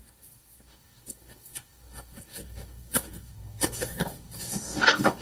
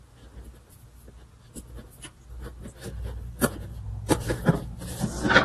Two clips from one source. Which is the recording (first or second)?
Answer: second